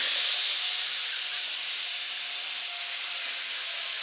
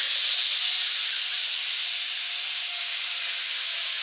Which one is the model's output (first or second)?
second